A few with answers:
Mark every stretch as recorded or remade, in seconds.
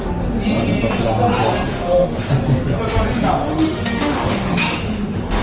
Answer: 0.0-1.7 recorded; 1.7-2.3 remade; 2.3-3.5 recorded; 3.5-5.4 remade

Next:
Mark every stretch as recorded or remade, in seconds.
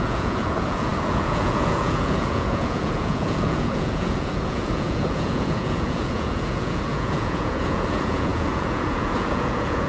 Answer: 0.0-9.9 remade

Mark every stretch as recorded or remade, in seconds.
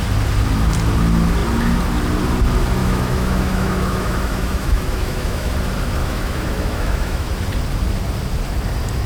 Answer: 0.0-2.8 recorded; 2.8-5.5 remade; 5.5-6.0 recorded; 6.0-7.3 remade; 7.3-9.1 recorded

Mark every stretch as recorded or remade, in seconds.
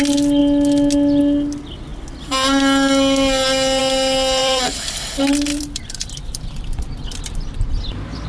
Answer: 0.0-4.4 recorded; 4.4-5.0 remade; 5.0-5.5 recorded; 5.5-6.8 remade; 6.8-8.3 recorded